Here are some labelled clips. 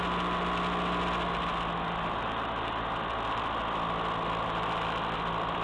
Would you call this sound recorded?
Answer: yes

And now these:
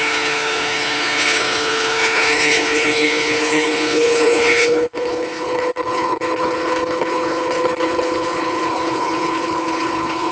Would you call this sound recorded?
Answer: no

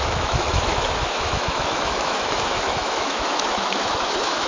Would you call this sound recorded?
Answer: no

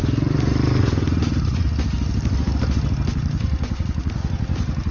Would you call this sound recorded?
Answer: yes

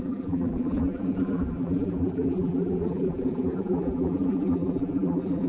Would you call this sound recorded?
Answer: no